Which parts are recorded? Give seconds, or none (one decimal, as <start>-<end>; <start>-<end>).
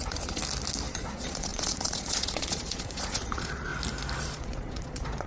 0.4-0.9; 3.7-4.2